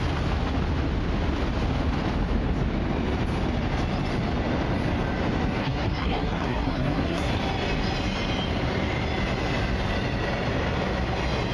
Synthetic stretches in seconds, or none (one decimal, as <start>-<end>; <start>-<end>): 5.6-7.3